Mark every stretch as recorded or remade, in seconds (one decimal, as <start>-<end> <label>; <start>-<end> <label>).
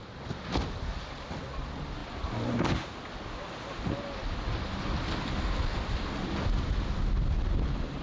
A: 0.0-8.0 recorded